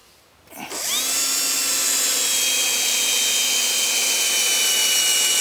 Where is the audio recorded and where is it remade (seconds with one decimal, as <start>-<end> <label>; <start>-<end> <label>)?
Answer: 0.0-5.4 recorded